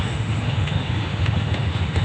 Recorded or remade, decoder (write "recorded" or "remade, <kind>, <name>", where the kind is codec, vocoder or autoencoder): remade, autoencoder, DAC-VAE